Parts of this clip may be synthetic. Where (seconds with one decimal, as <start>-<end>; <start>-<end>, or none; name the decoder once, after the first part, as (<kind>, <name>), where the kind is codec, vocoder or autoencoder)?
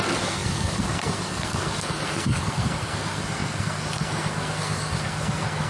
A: 0.0-5.7 (codec, SNAC)